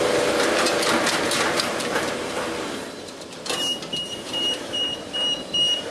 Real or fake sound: fake